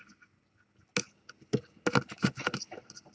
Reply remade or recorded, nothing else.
recorded